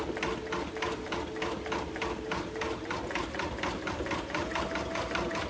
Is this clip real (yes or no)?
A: yes